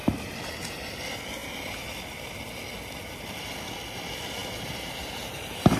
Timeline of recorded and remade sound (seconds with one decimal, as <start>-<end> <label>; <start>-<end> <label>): 0.0-0.9 remade; 0.9-4.4 recorded; 4.4-5.8 remade